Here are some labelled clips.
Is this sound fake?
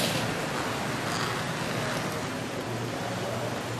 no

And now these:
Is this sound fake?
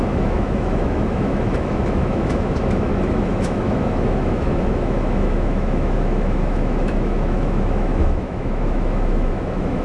yes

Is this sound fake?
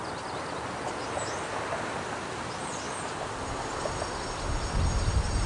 no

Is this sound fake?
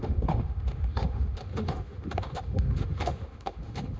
yes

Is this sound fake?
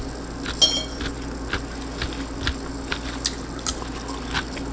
no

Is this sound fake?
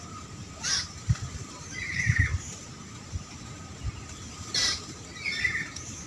yes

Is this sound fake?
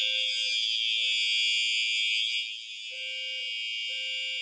no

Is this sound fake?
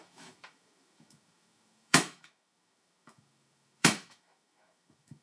yes